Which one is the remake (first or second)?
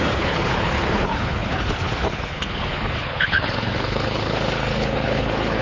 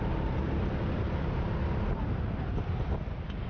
first